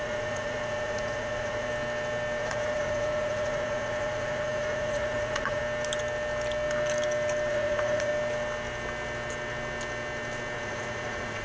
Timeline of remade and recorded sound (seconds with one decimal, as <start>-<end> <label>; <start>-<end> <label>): 0.0-1.7 remade; 1.7-2.4 recorded; 2.4-5.6 remade; 5.6-7.5 recorded; 7.5-8.1 remade; 8.1-10.6 recorded; 10.6-11.4 remade